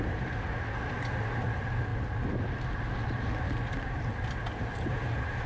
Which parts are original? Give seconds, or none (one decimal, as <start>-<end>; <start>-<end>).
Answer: 0.0-5.5